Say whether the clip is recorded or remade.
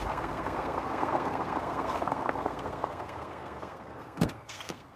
remade